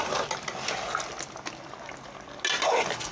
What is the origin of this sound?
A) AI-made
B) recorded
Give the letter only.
B